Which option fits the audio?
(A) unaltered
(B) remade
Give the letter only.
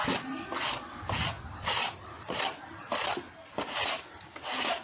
A